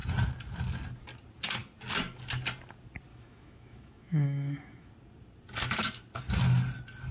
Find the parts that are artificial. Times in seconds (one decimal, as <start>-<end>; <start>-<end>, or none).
3.1-4.9